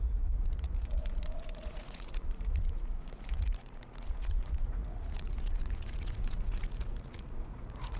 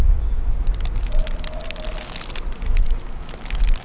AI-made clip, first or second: first